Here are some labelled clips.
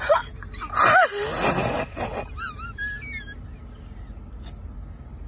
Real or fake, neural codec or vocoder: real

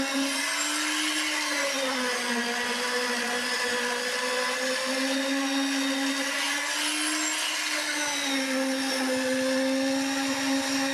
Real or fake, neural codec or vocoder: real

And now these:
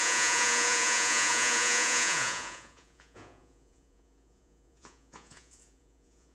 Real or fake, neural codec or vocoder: fake, vocoder, Vocos